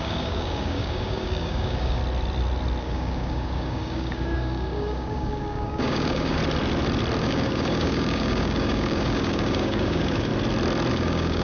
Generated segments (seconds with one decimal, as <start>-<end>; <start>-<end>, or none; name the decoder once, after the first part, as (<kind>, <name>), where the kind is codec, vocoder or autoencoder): 0.0-2.0 (codec, DAC); 2.8-6.4; 7.2-10.3; 10.9-11.4

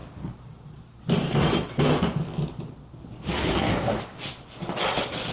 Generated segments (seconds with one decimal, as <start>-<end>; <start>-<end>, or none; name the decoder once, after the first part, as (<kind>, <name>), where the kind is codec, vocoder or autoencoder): 3.5-4.0 (codec, DAC)

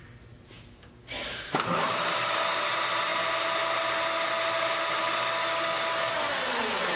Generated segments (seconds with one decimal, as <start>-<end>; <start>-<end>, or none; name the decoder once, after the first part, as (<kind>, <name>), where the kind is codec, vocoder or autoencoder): 0.5-2.6 (codec, DAC); 5.0-6.1

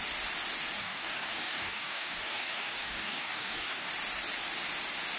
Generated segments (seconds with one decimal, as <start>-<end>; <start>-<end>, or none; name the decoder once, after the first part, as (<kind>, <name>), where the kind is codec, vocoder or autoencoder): 0.8-3.9 (codec, DAC)

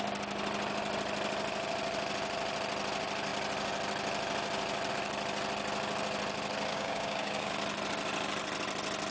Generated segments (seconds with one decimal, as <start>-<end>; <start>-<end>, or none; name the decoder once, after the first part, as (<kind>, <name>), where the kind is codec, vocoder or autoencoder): 6.7-7.5 (codec, DAC)

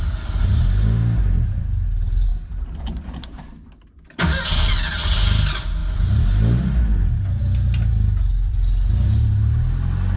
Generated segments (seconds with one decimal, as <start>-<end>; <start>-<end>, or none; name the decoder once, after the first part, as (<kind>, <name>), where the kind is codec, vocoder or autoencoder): none

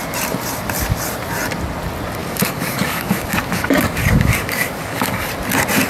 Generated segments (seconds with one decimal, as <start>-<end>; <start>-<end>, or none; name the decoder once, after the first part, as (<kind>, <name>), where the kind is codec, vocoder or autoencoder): 2.2-5.3 (codec, DAC)

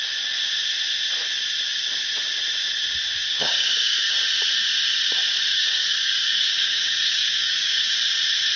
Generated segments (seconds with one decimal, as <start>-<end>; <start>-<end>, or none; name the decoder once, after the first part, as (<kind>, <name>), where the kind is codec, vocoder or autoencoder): 3.3-4.1 (codec, DAC); 5.5-7.9